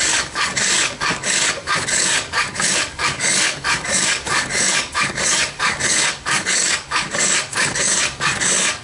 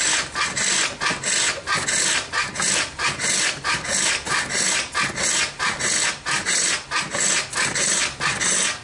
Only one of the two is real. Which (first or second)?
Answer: second